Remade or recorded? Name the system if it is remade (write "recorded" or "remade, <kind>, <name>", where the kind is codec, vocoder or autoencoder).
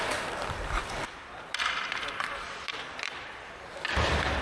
remade, vocoder, BigVGAN v2